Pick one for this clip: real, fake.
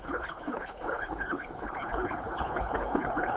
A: fake